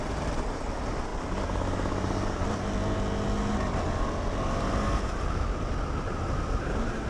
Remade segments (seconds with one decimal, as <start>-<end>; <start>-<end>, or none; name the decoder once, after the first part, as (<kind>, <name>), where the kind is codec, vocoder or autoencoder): none